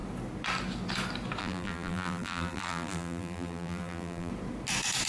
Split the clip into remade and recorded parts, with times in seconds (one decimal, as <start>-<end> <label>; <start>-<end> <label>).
0.0-1.4 recorded; 1.4-4.3 remade; 4.3-5.1 recorded